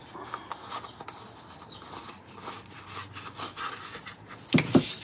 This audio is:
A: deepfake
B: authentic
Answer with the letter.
B